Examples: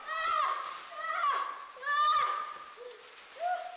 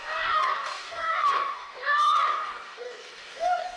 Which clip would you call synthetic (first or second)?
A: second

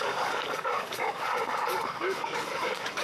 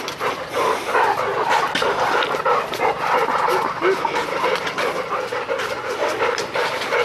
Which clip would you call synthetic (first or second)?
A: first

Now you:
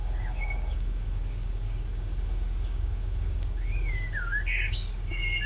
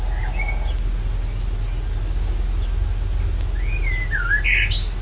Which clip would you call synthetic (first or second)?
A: first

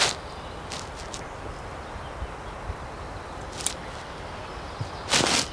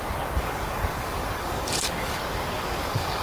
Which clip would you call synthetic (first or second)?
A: second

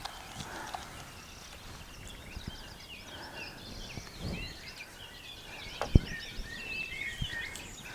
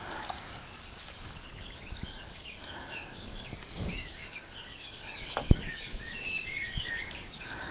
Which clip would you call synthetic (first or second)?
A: second